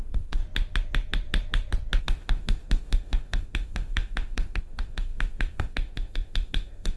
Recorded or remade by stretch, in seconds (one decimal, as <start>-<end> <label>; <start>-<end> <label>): 0.0-0.4 remade; 0.4-2.0 recorded; 2.0-7.0 remade